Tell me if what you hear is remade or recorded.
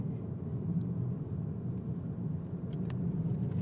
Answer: recorded